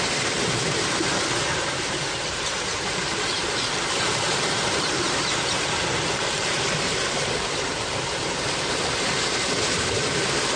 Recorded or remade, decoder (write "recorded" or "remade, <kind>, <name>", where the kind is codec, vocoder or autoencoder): remade, vocoder, BigVGAN v2